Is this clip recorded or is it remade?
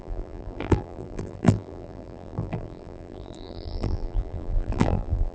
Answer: remade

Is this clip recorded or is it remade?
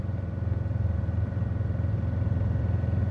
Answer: remade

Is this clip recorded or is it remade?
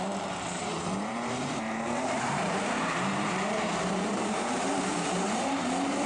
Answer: remade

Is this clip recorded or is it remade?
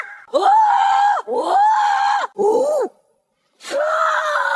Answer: remade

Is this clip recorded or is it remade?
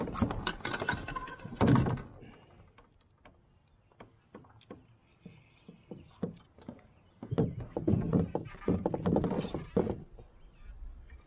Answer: recorded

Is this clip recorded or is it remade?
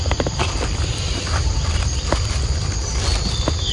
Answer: remade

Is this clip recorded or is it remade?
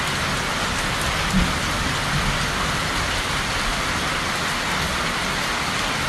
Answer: recorded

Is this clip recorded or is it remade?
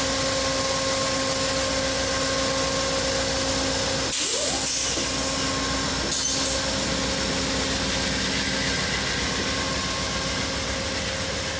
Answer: recorded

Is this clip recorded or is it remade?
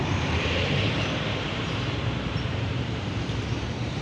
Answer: remade